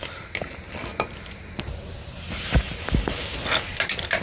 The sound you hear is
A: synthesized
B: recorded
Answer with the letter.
B